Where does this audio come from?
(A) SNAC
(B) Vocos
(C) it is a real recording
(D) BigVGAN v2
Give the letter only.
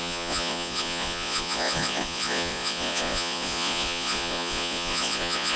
B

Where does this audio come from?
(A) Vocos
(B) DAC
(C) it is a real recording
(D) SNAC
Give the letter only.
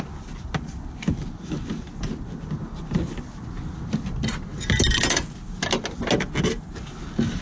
C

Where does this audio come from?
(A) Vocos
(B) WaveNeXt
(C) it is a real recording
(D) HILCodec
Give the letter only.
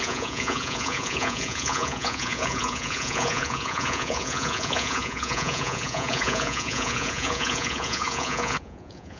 A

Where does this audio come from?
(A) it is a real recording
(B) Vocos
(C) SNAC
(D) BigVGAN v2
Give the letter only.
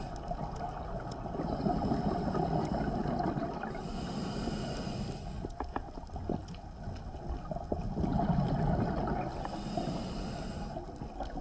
A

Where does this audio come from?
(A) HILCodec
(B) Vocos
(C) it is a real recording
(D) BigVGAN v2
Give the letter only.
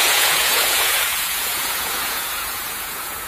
B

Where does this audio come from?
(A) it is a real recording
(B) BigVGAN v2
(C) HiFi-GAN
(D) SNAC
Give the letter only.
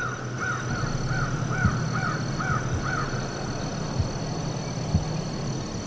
A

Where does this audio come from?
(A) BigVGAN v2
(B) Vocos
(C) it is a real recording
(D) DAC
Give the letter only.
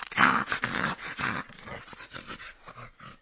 B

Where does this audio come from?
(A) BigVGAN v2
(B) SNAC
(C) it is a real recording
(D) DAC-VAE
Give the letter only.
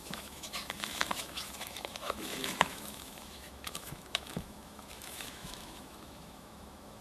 D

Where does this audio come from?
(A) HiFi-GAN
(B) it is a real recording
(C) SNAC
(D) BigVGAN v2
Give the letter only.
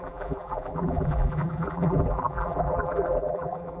D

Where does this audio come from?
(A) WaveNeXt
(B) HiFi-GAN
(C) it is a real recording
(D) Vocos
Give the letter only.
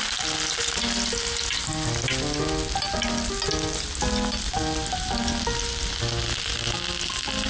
C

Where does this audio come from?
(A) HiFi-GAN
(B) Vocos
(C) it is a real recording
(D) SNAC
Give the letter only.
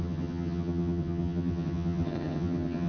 A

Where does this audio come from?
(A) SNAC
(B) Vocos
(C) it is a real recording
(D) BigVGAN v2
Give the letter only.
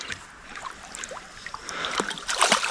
D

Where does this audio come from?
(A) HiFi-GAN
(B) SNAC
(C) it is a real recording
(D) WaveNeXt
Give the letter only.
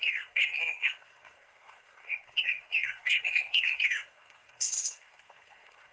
B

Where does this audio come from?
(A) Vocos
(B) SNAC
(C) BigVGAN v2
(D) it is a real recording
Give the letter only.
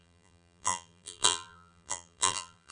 C